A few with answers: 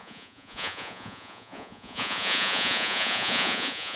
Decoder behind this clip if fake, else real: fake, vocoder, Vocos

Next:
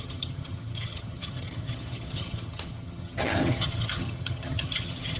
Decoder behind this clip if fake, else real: fake, vocoder, HiFi-GAN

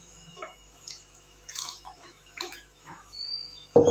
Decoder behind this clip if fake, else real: fake, autoencoder, DAC-VAE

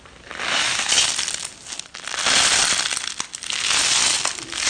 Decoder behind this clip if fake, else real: real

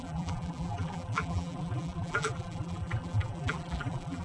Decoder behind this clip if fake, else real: fake, vocoder, BigVGAN v2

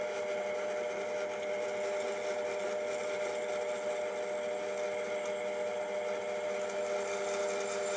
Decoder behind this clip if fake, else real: real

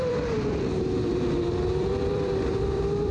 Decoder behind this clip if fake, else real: fake, vocoder, BigVGAN v2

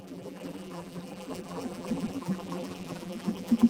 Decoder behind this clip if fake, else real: fake, vocoder, BigVGAN v2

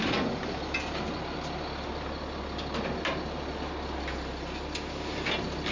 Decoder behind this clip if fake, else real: real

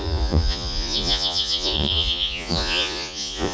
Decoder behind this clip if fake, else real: fake, vocoder, Vocos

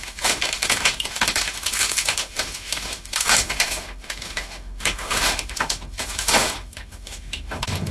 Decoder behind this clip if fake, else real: fake, autoencoder, DAC-VAE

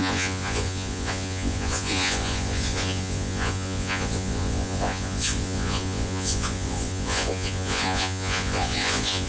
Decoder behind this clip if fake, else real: fake, vocoder, Vocos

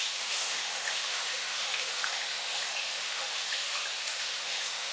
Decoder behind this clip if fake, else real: fake, autoencoder, DAC-VAE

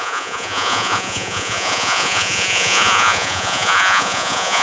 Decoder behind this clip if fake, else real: fake, vocoder, Vocos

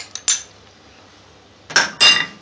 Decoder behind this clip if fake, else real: real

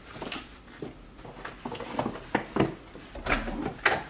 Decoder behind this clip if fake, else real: real